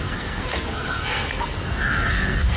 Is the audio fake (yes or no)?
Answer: yes